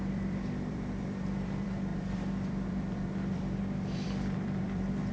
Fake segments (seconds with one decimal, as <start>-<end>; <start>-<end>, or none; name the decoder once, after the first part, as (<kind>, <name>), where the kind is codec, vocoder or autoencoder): 0.0-5.1 (vocoder, BigVGAN v2)